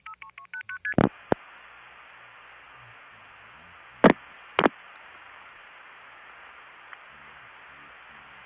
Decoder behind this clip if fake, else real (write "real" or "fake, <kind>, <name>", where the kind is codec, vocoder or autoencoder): real